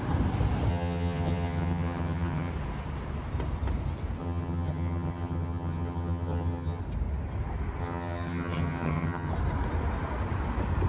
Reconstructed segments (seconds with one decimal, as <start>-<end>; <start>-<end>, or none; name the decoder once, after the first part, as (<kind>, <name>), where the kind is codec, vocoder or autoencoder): 0.7-2.5 (vocoder, HiFi-GAN); 4.2-6.8; 7.8-9.3